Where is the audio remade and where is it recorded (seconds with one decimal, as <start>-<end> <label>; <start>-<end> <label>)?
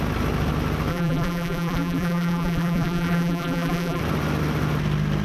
0.0-0.9 recorded; 0.9-4.0 remade; 4.0-5.2 recorded